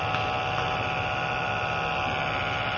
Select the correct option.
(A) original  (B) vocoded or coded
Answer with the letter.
A